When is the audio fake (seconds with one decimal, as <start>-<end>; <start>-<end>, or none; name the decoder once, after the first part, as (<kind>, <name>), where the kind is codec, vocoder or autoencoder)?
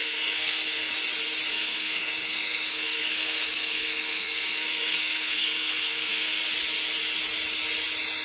0.0-0.9 (codec, SNAC); 1.5-6.4